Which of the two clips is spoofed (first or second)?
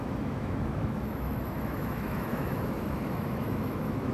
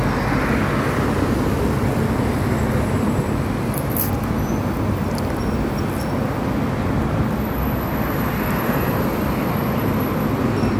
first